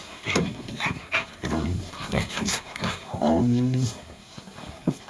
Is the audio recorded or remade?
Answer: remade